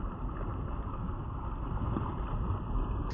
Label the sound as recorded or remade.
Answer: recorded